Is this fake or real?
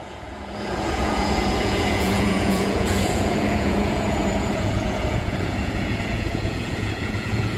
fake